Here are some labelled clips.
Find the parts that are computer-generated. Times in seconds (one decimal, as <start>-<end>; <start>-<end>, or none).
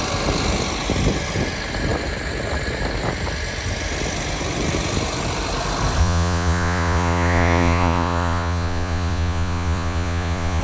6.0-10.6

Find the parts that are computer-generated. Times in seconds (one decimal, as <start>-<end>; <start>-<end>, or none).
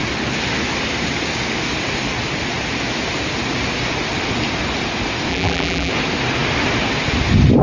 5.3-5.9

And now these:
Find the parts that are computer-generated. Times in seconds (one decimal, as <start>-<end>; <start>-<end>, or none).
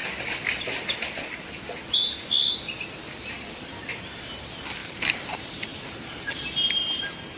4.8-6.3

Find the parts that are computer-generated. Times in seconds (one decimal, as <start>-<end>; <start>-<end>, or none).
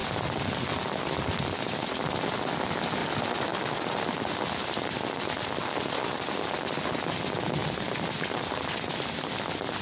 none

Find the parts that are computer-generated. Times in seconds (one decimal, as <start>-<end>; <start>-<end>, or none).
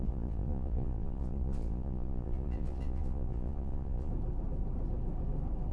0.0-4.1